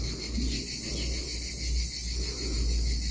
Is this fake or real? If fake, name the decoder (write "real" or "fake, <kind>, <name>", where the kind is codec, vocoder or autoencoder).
real